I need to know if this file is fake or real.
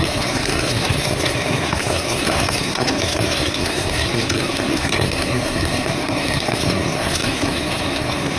fake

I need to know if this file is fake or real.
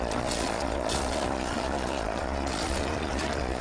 fake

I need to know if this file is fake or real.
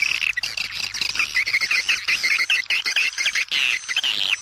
real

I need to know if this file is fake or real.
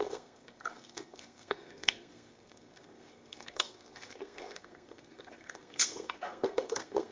fake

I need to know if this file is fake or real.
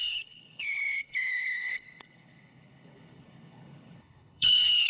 fake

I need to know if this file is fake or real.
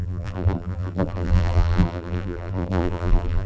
fake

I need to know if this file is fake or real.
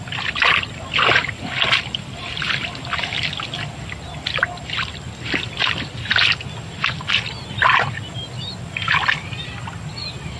real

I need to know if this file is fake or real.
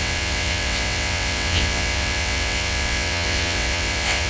fake